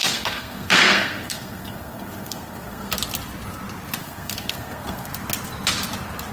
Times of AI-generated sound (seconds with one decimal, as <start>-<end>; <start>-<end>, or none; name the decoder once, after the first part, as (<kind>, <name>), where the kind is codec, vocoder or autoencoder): 0.0-2.9 (codec, SNAC); 4.0-5.1